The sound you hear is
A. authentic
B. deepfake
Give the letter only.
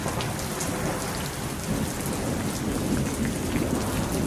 A